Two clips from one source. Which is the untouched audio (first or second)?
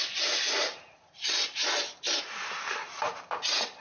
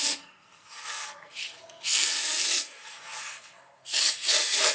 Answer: first